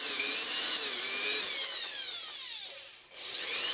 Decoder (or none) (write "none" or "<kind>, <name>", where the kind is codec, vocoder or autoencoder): none